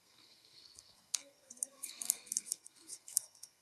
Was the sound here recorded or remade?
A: remade